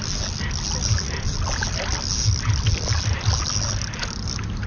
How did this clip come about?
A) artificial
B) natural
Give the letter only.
B